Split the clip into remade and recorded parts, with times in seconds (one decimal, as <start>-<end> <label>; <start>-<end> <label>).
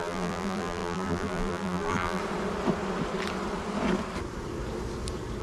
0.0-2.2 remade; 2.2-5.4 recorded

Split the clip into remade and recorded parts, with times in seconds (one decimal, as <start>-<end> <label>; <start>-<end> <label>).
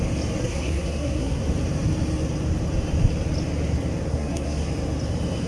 0.0-0.4 recorded; 0.4-1.4 remade; 1.4-4.1 recorded; 4.1-4.7 remade; 4.7-5.5 recorded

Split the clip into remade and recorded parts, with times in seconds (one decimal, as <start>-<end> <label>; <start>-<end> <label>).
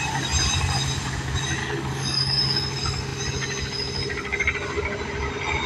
0.0-1.6 recorded; 1.6-2.4 remade; 2.4-5.7 recorded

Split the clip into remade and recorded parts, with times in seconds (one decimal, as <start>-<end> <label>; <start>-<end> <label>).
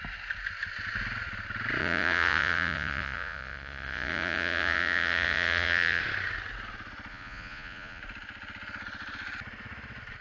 0.0-1.8 recorded; 1.8-6.0 remade; 6.0-7.1 recorded; 7.1-8.0 remade; 8.0-10.2 recorded